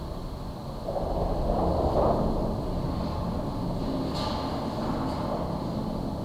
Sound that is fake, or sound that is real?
real